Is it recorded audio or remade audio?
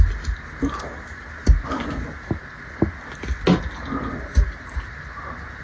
recorded